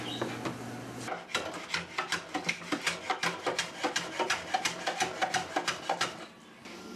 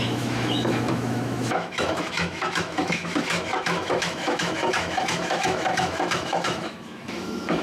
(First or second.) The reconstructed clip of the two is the second